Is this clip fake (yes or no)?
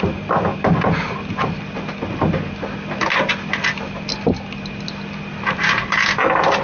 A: no